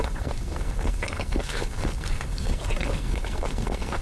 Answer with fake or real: fake